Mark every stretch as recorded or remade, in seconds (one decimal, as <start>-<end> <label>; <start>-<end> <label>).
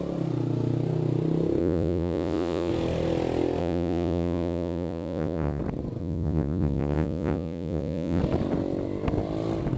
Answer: 0.0-1.6 recorded; 1.6-2.7 remade; 2.7-3.6 recorded; 3.6-5.6 remade; 5.6-6.0 recorded; 6.0-8.2 remade; 8.2-9.8 recorded